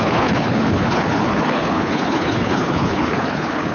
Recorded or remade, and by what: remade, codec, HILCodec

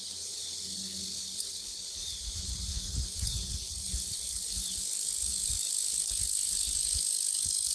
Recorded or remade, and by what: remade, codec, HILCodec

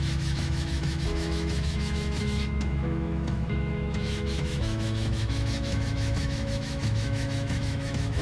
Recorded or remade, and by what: remade, autoencoder, DAC-VAE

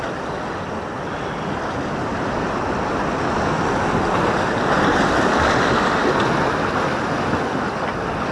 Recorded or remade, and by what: recorded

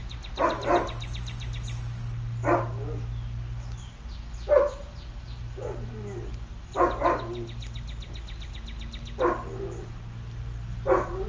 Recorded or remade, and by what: recorded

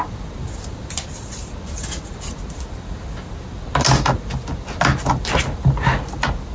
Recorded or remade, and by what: recorded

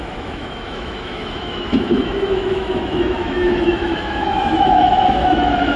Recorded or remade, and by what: remade, autoencoder, DAC-VAE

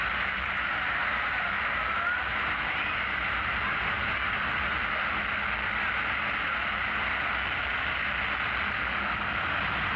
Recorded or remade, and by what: recorded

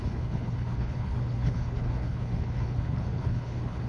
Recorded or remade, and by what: remade, codec, HILCodec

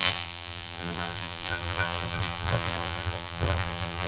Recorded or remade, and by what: remade, vocoder, BigVGAN v2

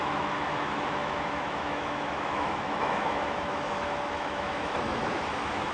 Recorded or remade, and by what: remade, autoencoder, DAC-VAE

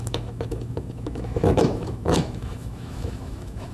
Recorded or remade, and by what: remade, autoencoder, DAC-VAE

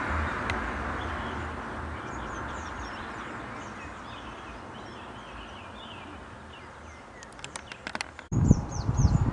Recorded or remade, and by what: recorded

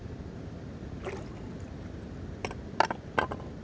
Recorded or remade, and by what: recorded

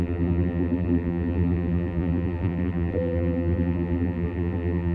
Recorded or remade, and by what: remade, vocoder, BigVGAN v2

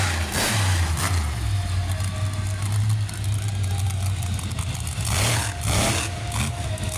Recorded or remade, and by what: recorded